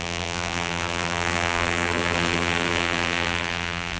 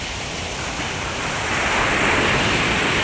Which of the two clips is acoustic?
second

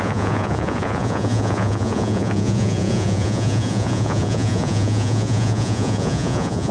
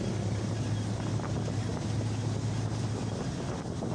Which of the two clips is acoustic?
second